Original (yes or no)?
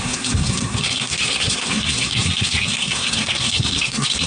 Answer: no